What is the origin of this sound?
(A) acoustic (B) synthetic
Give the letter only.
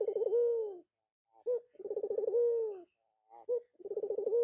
A